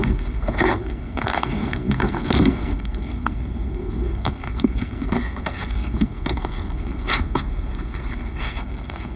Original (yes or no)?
no